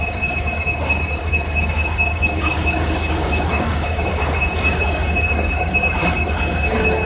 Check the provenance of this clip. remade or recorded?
remade